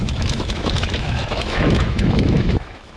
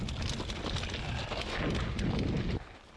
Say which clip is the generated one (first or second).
first